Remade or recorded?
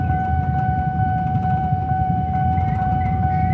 remade